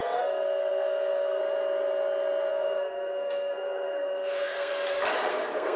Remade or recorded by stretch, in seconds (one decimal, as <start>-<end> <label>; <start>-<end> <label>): 0.0-1.4 remade; 1.4-2.5 recorded; 2.5-4.7 remade; 4.7-5.3 recorded; 5.3-5.8 remade